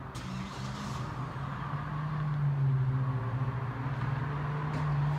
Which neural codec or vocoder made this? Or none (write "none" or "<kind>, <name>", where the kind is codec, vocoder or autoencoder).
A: none